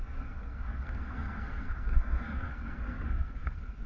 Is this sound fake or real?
fake